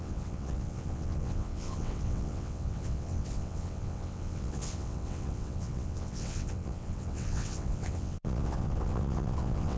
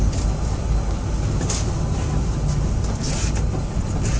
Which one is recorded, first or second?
second